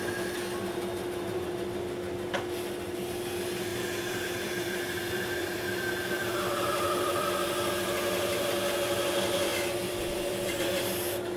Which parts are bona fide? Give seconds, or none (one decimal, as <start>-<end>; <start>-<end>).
0.0-3.7; 7.7-9.5; 10.6-11.4